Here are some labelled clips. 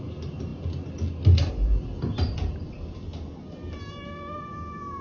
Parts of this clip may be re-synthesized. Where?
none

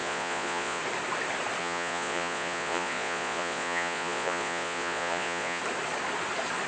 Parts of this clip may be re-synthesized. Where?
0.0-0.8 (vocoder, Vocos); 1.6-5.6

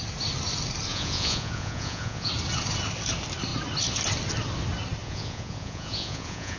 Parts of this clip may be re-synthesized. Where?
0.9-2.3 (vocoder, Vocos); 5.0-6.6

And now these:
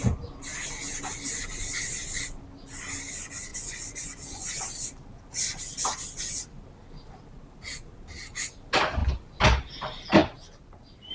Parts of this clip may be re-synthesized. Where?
3.5-4.5 (vocoder, Vocos)

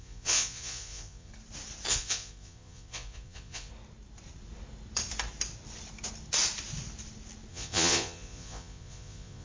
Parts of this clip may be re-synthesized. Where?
0.0-1.3 (vocoder, Vocos); 1.9-3.7; 7.5-9.4

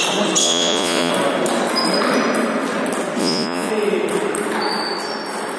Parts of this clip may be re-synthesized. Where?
0.4-1.1 (vocoder, Vocos); 3.2-3.7

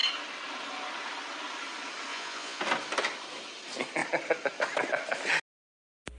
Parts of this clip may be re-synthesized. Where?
2.1-2.6 (vocoder, Vocos)

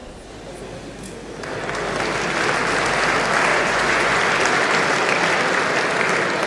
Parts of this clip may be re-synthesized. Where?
3.5-4.2 (vocoder, Vocos)